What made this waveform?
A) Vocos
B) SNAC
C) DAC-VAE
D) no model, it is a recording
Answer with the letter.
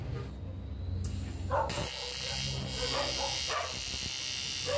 D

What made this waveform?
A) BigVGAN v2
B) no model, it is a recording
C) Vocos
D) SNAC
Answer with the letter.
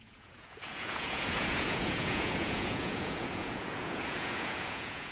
C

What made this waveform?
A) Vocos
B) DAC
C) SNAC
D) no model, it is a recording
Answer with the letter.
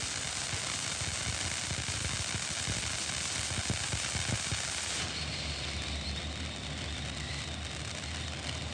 D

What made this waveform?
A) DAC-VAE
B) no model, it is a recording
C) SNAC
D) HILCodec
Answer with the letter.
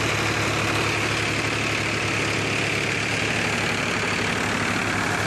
B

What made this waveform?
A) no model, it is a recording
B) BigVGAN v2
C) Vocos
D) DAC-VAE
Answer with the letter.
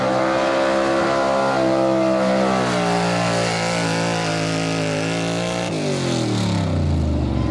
A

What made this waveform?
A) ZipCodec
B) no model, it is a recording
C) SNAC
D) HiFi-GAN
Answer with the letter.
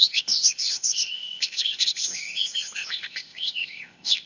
A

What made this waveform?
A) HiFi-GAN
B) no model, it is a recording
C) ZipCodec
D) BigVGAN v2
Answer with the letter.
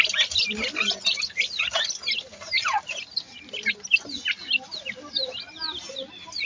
B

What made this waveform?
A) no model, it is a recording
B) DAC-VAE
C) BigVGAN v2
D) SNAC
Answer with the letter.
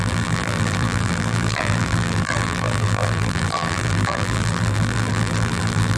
C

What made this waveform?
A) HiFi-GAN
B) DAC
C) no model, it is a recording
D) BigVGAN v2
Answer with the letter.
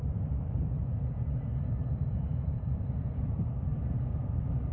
D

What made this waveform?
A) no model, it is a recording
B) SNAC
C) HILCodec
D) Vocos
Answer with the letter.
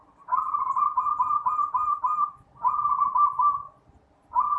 A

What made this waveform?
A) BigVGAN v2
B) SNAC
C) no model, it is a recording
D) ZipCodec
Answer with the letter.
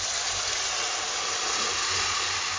C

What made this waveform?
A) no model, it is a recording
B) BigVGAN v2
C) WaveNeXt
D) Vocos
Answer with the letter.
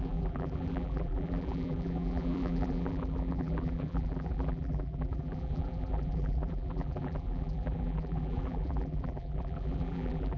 B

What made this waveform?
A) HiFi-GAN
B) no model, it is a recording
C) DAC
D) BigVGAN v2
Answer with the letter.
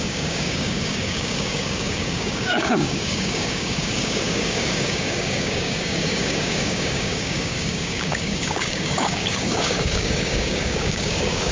C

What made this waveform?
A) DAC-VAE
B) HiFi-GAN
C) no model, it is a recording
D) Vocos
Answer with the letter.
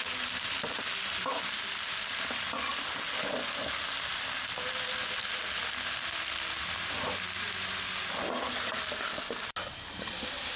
C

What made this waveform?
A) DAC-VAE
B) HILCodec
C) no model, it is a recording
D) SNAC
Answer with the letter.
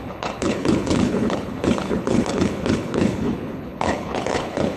B